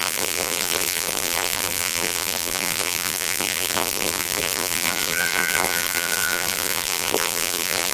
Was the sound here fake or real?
fake